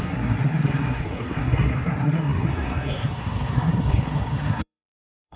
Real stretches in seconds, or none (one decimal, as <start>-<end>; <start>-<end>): none